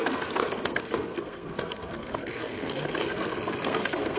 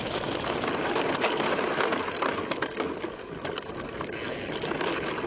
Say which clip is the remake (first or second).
first